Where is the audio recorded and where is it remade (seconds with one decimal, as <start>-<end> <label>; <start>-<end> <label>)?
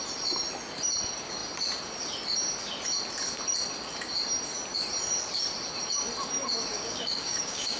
0.0-6.7 recorded; 6.7-7.8 remade